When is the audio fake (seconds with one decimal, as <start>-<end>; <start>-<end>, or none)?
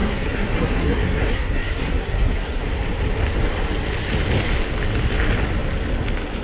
0.0-2.6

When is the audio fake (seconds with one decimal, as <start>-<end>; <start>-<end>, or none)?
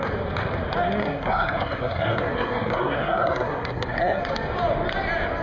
1.0-4.2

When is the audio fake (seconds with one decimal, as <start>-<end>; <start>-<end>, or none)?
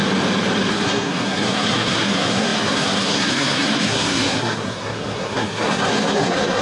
0.7-6.6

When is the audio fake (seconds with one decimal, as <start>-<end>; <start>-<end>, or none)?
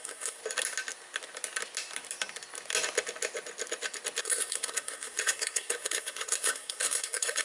0.0-0.4; 4.2-7.4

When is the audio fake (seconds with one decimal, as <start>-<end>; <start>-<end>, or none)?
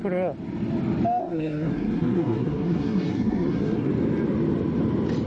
1.2-3.9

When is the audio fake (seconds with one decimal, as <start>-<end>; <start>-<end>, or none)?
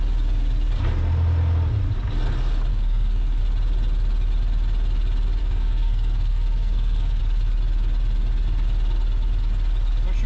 2.7-3.4; 5.4-7.2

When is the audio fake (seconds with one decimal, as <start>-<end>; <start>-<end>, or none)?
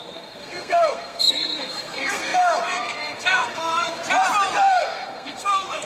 0.0-4.0; 4.7-5.9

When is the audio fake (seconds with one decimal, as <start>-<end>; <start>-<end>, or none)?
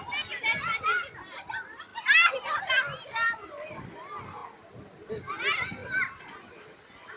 none